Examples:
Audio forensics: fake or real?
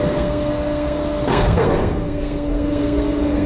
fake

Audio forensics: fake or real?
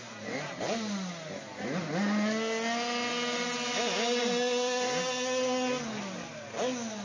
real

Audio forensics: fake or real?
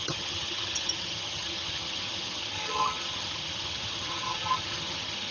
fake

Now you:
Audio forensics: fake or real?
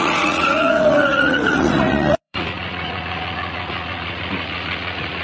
fake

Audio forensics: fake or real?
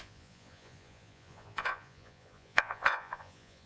fake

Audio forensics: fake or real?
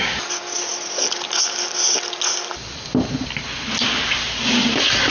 real